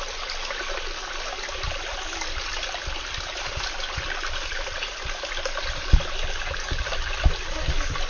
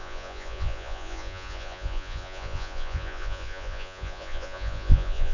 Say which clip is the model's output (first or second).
second